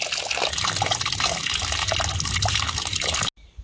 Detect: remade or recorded recorded